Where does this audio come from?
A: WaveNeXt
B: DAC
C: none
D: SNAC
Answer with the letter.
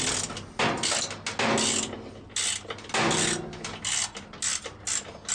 C